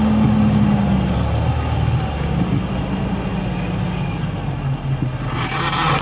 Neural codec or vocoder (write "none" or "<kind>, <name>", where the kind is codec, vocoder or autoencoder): none